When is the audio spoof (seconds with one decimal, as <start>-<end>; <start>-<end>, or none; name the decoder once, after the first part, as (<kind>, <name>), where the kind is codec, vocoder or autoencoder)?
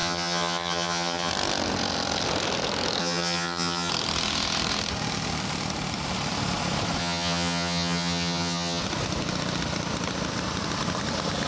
0.0-1.3 (vocoder, HiFi-GAN); 3.0-3.9; 7.0-8.8